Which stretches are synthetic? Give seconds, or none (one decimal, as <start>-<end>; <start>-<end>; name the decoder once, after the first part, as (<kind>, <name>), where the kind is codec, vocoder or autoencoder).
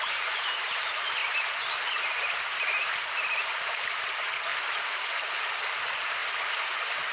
0.0-1.2 (vocoder, BigVGAN v2); 2.3-6.2